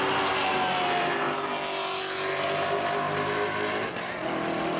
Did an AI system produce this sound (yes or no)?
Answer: no